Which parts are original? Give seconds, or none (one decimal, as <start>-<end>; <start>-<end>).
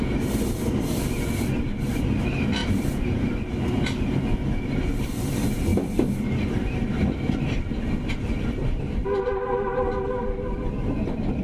0.0-11.4